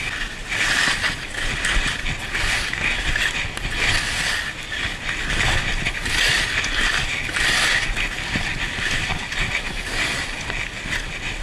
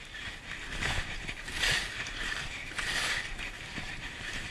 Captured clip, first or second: first